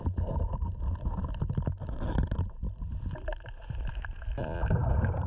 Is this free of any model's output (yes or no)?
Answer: yes